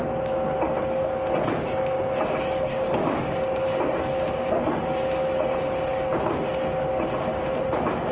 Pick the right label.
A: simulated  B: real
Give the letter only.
B